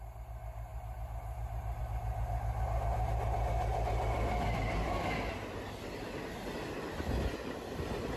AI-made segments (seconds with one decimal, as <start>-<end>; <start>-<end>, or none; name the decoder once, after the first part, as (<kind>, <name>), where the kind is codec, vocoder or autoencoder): none